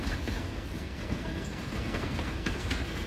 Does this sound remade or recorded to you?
remade